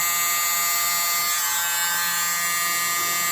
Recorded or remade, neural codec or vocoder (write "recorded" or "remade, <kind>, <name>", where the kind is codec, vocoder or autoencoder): recorded